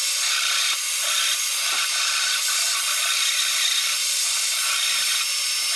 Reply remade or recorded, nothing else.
recorded